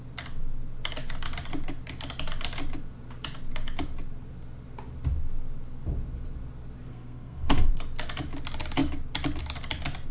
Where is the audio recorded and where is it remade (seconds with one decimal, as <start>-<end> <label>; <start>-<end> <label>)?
0.0-6.9 recorded; 6.9-7.7 remade; 7.7-10.1 recorded